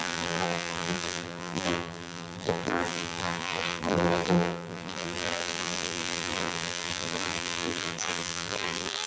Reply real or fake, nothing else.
fake